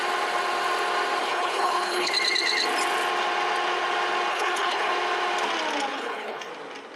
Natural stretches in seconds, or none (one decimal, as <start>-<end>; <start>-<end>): 0.0-1.2; 2.1-4.3; 4.9-5.9; 6.5-7.0